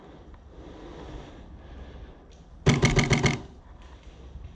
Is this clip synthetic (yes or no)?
no